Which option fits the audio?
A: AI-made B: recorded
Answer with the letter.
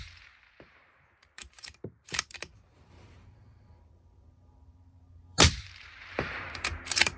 A